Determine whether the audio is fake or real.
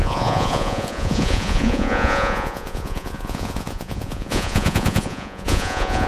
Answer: fake